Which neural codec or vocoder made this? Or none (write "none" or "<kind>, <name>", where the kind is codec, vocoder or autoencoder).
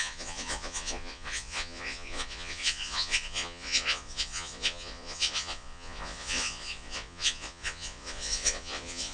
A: vocoder, Vocos